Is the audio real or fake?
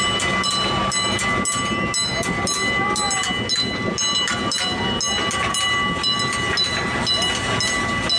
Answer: real